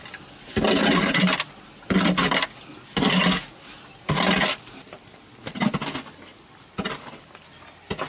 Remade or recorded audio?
recorded